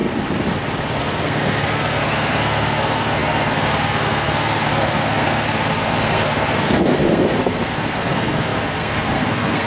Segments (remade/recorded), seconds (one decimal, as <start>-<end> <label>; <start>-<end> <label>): 0.0-1.0 recorded; 1.0-9.7 remade